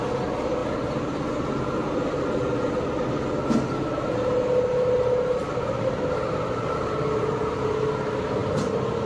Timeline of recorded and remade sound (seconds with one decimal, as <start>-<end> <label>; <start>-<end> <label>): 0.0-9.1 recorded